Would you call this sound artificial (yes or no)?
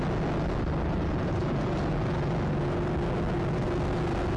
no